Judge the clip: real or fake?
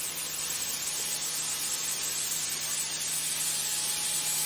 real